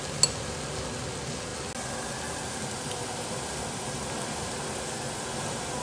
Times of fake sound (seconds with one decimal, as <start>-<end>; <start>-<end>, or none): none